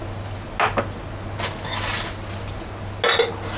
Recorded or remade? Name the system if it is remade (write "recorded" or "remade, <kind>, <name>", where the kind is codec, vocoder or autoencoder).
recorded